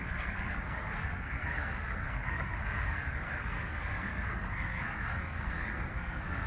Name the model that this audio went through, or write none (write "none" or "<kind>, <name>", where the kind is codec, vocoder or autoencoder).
codec, SNAC